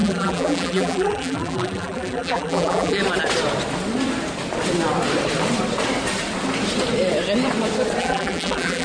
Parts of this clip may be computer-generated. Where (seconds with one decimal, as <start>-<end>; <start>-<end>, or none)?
0.0-3.0; 8.0-8.8